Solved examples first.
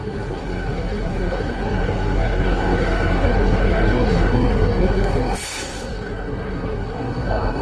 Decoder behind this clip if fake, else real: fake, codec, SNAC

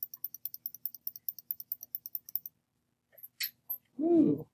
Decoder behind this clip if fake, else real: real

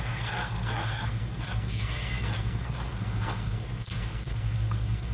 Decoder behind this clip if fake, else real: fake, codec, SNAC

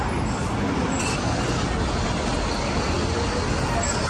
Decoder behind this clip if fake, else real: real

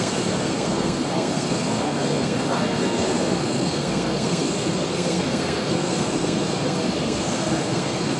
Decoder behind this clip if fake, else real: fake, codec, SNAC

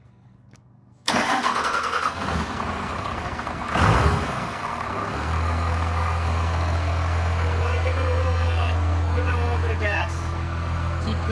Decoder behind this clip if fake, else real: fake, codec, SNAC